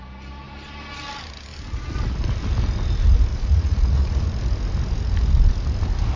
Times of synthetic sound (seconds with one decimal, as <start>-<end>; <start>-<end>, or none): 3.3-4.2